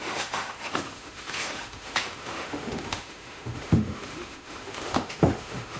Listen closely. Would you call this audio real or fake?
fake